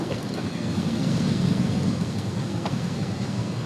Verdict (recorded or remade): remade